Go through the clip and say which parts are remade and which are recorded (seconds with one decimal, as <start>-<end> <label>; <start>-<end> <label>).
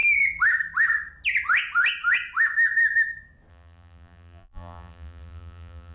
0.0-3.5 recorded; 3.5-5.9 remade